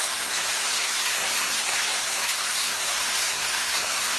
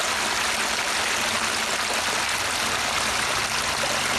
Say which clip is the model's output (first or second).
first